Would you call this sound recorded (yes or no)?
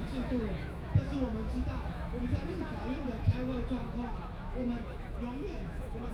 no